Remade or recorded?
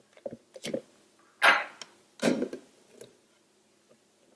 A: recorded